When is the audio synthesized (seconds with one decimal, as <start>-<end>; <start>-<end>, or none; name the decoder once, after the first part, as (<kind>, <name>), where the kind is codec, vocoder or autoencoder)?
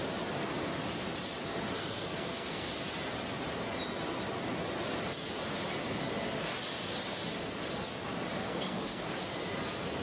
1.8-2.7 (codec, SNAC); 8.4-9.1